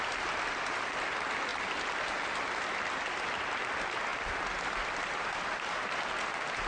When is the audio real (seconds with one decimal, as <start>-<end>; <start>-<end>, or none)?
0.0-4.1; 6.2-6.7

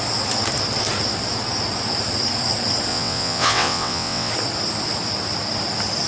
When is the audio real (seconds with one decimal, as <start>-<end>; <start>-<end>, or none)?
0.0-2.9; 4.3-6.1

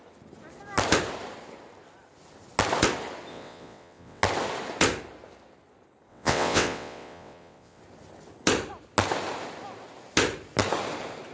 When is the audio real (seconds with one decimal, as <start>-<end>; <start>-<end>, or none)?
0.0-3.3; 4.2-6.1; 7.8-11.3

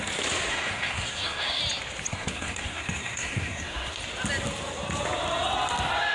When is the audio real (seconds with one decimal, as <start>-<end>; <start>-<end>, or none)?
0.0-0.5; 1.6-2.1; 4.0-6.1

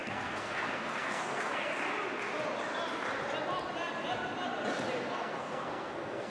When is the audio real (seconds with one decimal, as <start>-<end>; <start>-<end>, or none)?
1.7-5.1

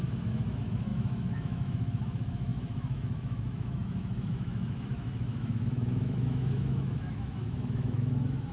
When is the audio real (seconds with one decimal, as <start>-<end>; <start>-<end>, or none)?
none

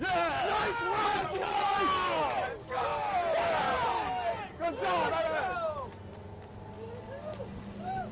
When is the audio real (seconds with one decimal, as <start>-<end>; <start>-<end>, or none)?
0.0-1.1; 1.8-8.1

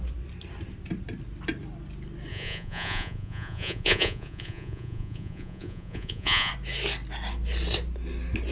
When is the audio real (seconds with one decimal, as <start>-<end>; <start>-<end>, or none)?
0.0-2.3; 6.5-8.5